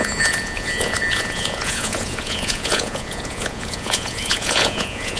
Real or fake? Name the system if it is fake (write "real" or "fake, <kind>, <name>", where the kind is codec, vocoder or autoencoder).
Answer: fake, vocoder, Vocos